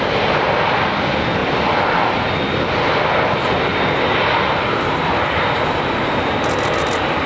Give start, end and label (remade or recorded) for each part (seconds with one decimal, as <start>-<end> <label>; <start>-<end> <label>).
0.0-7.3 recorded